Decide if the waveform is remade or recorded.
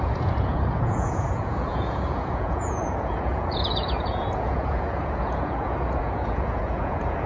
remade